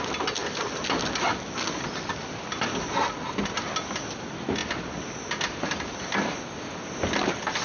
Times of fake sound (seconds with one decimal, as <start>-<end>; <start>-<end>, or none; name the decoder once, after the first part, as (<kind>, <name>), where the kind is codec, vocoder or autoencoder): none